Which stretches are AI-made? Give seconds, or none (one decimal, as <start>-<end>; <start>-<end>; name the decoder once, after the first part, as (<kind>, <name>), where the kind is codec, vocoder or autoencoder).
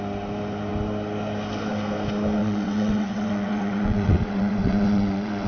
2.4-5.5 (vocoder, WaveNeXt)